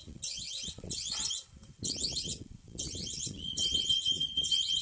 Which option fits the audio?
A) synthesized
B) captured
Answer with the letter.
A